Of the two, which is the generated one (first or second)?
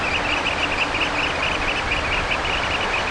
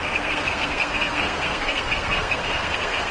second